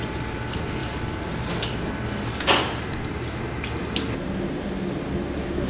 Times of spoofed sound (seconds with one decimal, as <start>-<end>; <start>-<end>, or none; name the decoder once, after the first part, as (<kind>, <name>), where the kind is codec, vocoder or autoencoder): none